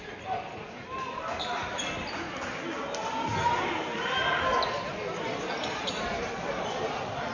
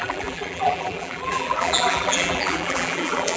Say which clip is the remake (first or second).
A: second